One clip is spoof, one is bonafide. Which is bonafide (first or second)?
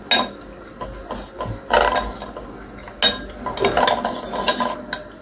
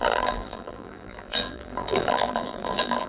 first